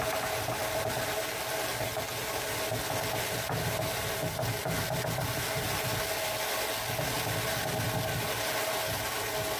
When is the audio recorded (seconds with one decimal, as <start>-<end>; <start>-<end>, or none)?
0.0-9.6